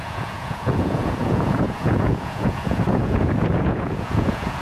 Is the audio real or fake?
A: fake